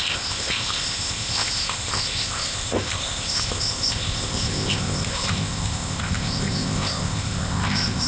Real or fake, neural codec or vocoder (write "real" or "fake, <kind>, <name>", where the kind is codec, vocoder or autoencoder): fake, codec, ZipCodec